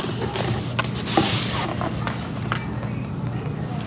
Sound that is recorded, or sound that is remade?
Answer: recorded